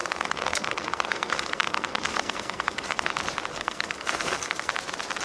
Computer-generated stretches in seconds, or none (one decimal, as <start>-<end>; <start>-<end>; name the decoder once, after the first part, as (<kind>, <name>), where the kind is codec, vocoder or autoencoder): 0.0-3.1 (codec, SNAC); 3.5-4.7